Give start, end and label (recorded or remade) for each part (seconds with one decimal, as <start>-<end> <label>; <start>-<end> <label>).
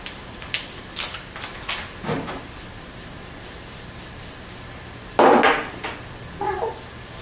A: 0.0-7.2 recorded